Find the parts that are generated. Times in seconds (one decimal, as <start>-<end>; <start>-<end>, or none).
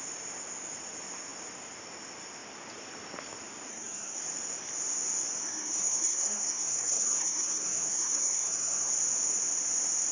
3.7-4.2; 5.4-8.9